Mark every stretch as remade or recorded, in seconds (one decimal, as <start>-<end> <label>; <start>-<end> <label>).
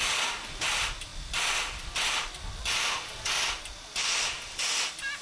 0.0-5.2 recorded